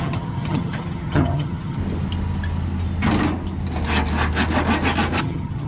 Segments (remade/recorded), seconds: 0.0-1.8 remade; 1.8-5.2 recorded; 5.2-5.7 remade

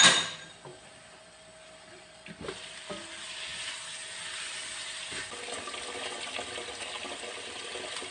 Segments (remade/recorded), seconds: 0.0-3.5 remade; 3.5-6.8 recorded; 6.8-8.1 remade

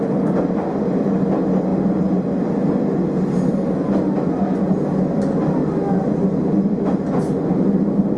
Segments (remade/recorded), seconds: 0.0-8.2 recorded